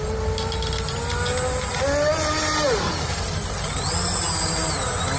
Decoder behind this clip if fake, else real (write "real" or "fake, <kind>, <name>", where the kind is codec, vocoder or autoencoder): real